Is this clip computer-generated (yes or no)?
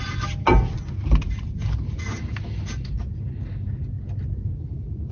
no